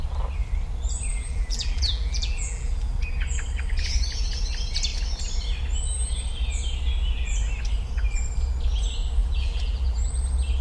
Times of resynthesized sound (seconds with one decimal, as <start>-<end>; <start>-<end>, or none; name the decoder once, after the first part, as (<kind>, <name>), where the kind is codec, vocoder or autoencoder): 1.1-3.0 (vocoder, BigVGAN v2); 9.2-10.1